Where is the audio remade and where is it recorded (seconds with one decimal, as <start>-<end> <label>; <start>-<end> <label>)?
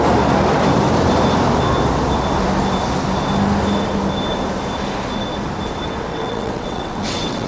0.0-6.1 recorded; 6.1-7.5 remade